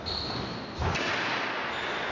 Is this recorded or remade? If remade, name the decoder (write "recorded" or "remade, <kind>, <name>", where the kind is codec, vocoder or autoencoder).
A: recorded